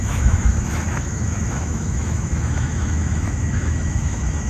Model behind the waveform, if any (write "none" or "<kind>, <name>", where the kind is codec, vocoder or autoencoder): autoencoder, DAC-VAE